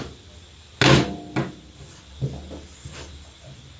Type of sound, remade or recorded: recorded